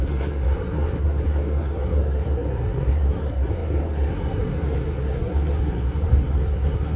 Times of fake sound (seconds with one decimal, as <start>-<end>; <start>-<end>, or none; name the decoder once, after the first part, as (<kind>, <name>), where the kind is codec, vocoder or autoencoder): 0.0-7.0 (codec, SNAC)